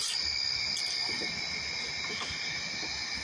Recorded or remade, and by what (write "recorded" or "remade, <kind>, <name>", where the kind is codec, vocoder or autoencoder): recorded